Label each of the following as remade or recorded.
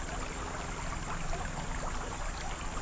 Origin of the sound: recorded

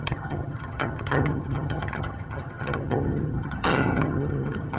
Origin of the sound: remade